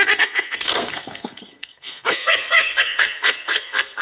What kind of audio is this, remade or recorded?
remade